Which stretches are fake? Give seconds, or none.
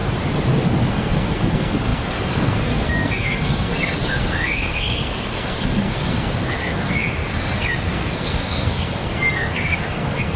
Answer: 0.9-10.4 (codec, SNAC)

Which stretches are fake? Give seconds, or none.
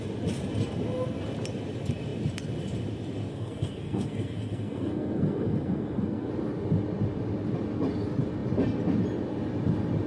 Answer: 3.3-6.3 (codec, SNAC)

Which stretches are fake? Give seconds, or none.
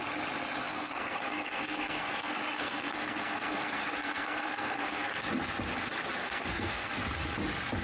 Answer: 0.7-5.1 (codec, SNAC); 6.2-6.9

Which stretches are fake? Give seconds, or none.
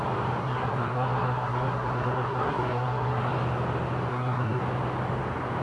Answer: 0.4-3.3 (codec, SNAC); 4.1-4.6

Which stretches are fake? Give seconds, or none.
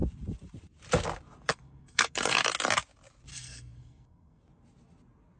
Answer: 1.5-2.4 (codec, SNAC); 3.3-4.4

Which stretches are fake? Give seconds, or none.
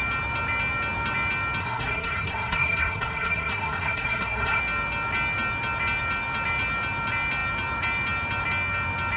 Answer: 1.6-4.6 (codec, SNAC)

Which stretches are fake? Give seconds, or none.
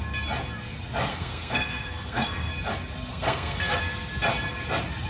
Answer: 1.1-2.5 (codec, SNAC); 3.1-3.8